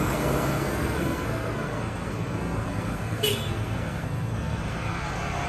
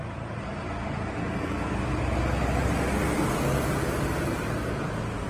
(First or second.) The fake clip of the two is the first